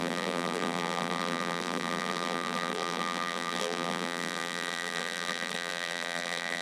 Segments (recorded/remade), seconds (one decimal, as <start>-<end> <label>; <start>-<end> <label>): 0.0-6.6 remade